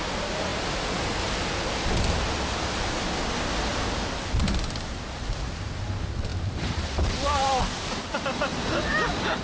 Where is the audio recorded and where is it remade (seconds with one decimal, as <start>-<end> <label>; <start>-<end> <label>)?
0.0-3.7 recorded; 3.7-5.0 remade; 5.0-6.3 recorded; 6.3-7.6 remade; 7.6-9.4 recorded